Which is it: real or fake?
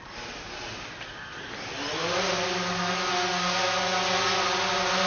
real